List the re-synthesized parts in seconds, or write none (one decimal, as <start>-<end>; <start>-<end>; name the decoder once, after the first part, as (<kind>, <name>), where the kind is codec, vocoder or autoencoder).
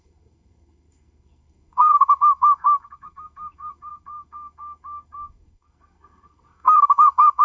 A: 0.0-7.4 (codec, SNAC)